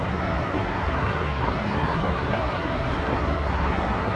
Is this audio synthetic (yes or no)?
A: yes